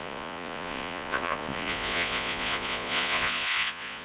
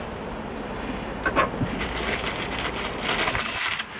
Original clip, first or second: second